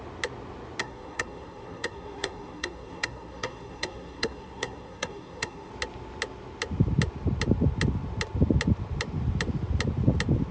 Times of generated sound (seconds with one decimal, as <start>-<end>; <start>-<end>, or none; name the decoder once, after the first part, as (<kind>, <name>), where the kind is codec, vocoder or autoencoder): 0.8-5.7 (codec, SNAC)